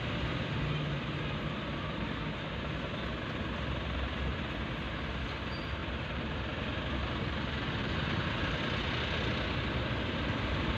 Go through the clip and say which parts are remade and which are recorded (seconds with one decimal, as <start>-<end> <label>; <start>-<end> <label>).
0.0-5.8 recorded; 5.8-6.4 remade; 6.4-7.8 recorded; 7.8-8.6 remade; 8.6-10.8 recorded